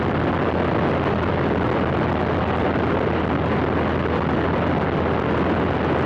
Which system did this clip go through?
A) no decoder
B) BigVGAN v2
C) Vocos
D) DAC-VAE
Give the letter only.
A